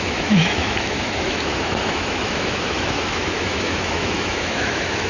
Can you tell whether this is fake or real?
fake